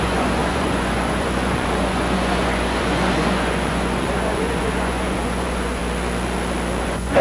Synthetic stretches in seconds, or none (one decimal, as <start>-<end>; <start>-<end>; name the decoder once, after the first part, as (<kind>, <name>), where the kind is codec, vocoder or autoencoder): 0.0-5.8 (vocoder, Vocos); 6.8-7.2